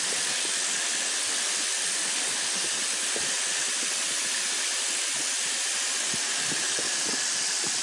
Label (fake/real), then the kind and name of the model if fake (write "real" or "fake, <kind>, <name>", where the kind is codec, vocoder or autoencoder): real